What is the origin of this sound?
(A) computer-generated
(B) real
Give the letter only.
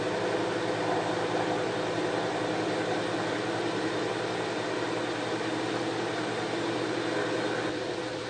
B